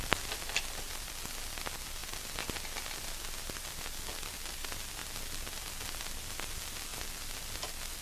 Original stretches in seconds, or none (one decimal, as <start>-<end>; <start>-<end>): 0.0-8.0